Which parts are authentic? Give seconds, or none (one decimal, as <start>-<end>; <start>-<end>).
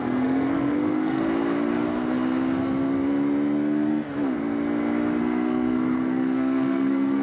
1.2-5.2